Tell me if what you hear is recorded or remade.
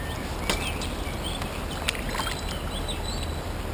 recorded